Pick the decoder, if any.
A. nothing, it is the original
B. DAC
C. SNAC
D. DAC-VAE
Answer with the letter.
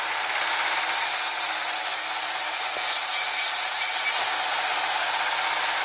A